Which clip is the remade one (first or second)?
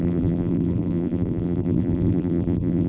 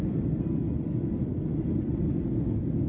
first